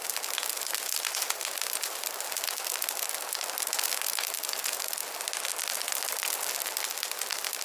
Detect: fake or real real